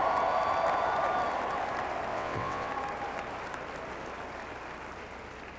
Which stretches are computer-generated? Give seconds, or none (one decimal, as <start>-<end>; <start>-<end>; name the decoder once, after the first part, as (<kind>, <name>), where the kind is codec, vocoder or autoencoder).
2.1-2.7 (vocoder, WaveNeXt)